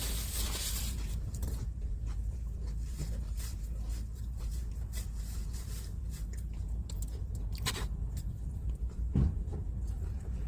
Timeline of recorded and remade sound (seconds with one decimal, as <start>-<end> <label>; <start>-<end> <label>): 0.0-0.7 recorded; 0.7-10.5 remade